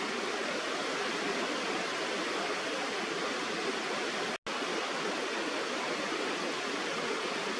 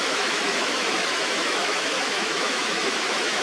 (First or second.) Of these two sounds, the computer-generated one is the second